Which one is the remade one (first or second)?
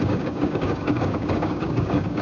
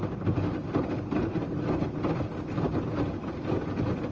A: first